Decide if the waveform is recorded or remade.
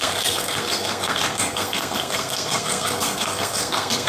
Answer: remade